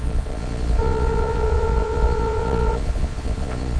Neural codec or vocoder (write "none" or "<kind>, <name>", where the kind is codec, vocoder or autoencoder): vocoder, Vocos